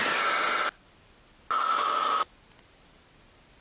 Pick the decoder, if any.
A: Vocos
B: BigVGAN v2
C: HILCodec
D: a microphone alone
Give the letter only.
D